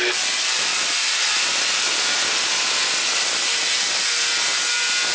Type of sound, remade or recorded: recorded